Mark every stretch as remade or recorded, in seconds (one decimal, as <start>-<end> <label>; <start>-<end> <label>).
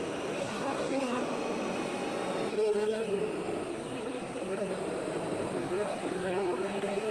0.0-0.4 recorded; 0.4-1.2 remade; 1.2-2.5 recorded; 2.5-3.2 remade; 3.2-3.7 recorded; 3.7-4.7 remade; 4.7-5.6 recorded; 5.6-7.1 remade